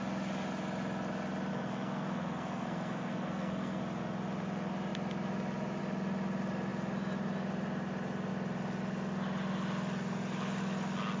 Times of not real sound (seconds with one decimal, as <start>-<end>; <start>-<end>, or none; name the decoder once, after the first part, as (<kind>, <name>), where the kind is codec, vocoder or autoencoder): 1.5-3.8 (codec, SNAC)